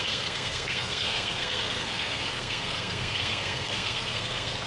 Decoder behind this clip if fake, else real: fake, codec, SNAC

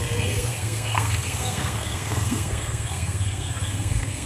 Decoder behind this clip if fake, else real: fake, codec, SNAC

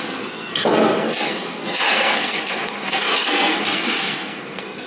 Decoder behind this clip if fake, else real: fake, codec, SNAC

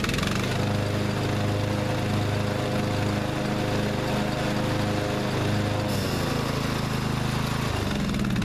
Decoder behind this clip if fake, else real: real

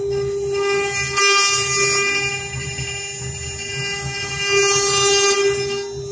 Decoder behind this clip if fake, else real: real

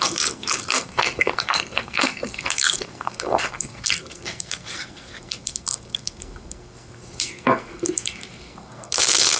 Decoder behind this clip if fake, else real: fake, codec, SNAC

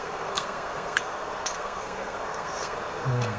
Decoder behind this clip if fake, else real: fake, codec, SNAC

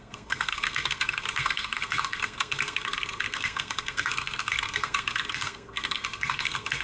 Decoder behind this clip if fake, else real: fake, codec, SNAC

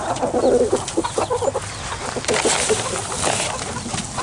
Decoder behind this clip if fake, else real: real